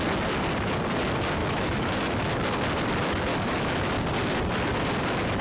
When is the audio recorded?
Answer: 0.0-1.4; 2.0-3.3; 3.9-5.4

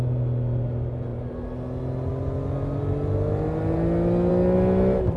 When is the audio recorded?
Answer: 0.0-5.2

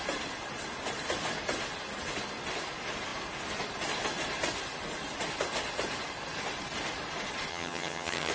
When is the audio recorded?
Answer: 0.0-7.5

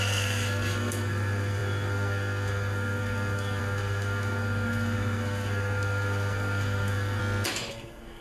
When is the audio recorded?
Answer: 7.2-7.7